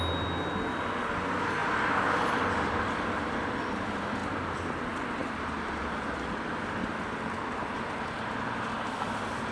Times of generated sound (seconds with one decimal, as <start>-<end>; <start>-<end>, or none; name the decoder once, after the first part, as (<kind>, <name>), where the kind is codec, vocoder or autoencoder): 1.6-3.7 (vocoder, BigVGAN v2); 4.2-4.8; 5.2-9.5